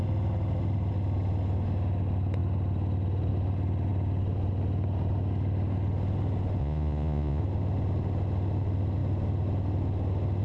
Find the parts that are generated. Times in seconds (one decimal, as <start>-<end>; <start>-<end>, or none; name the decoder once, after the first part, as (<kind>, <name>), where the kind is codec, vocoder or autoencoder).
6.6-7.4 (vocoder, Vocos)